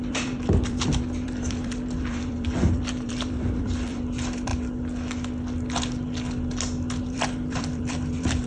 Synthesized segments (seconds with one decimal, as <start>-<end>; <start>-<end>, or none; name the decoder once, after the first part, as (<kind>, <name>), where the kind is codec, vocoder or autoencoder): 0.0-4.5 (vocoder, BigVGAN v2); 7.0-8.5